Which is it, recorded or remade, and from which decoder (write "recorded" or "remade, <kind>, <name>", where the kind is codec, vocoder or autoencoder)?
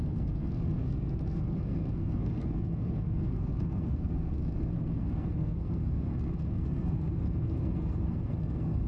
remade, codec, SNAC